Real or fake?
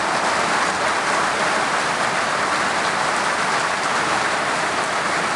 real